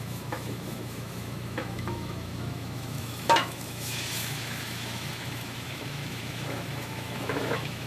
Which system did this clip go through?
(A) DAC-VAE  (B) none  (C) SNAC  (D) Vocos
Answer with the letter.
A